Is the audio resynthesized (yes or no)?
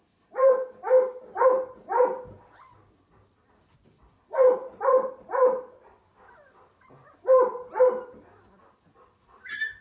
yes